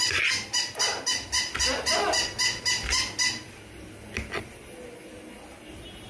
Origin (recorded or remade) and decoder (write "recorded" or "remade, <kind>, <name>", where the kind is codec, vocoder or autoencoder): recorded